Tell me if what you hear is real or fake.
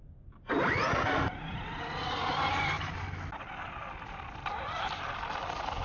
real